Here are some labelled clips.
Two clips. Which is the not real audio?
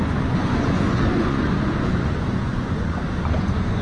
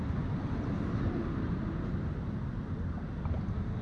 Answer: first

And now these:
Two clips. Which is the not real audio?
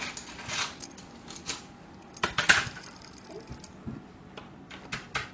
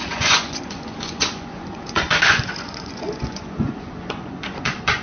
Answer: second